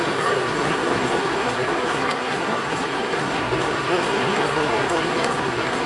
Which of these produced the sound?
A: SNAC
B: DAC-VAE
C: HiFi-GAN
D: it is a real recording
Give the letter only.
A